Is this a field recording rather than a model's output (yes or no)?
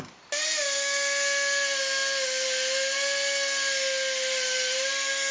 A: yes